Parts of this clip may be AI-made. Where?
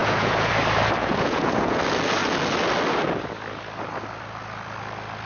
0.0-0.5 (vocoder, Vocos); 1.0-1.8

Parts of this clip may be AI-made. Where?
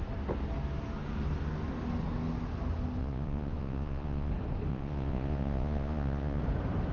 3.0-4.3 (vocoder, Vocos); 4.7-6.4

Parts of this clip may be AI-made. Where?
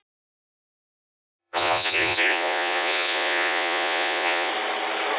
1.4-4.5 (vocoder, Vocos)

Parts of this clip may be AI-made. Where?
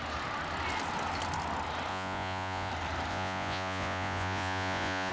1.9-2.7 (vocoder, Vocos); 3.1-5.1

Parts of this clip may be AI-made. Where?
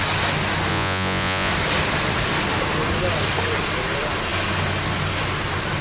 0.7-1.5 (vocoder, Vocos)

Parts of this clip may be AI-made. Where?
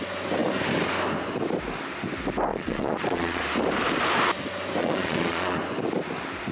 2.5-3.4 (vocoder, Vocos); 4.8-5.6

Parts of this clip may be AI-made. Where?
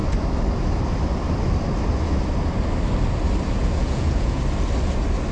3.6-4.4 (vocoder, Vocos)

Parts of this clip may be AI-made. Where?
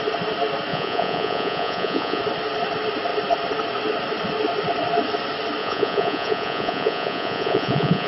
0.7-2.2 (vocoder, Vocos); 5.6-8.1